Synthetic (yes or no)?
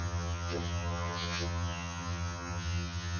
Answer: yes